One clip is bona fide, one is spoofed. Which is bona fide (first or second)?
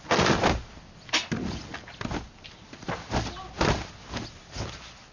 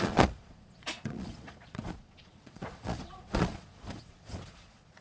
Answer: first